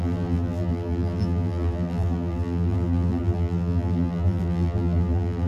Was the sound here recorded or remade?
remade